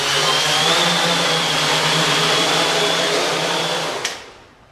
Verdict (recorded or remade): remade